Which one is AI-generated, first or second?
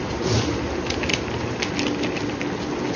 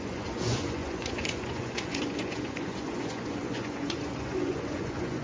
second